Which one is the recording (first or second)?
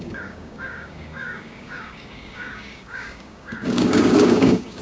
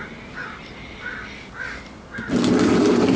second